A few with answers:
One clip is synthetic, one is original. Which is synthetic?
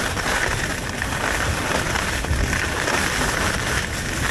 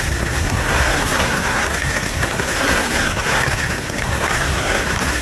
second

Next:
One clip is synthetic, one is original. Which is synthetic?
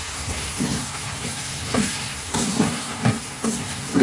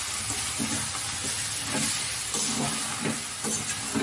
first